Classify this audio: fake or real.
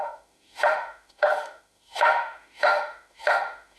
fake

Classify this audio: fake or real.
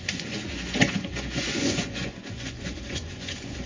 fake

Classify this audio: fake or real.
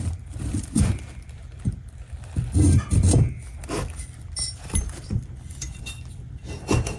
fake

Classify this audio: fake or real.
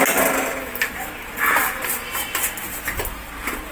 real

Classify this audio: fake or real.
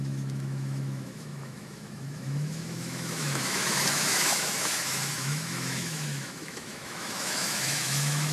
fake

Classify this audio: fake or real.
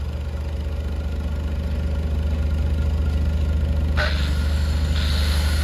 real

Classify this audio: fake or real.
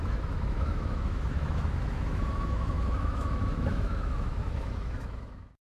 fake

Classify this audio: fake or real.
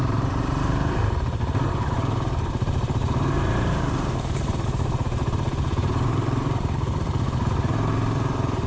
fake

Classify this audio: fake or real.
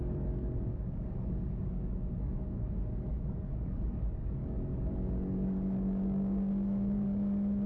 fake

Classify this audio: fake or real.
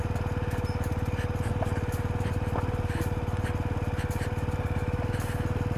real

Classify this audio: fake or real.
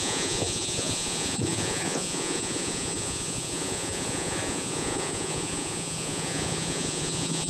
fake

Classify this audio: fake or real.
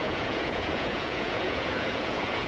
fake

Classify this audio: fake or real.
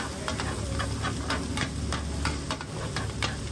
real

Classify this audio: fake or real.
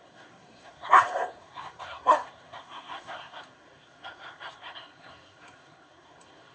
fake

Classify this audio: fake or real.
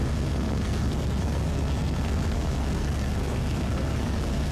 fake